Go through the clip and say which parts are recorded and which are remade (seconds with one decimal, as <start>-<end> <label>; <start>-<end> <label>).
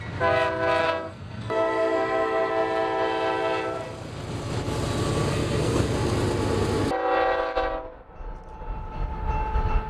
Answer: 0.0-0.8 recorded; 0.8-2.5 remade; 2.5-5.3 recorded; 5.3-5.9 remade; 5.9-9.9 recorded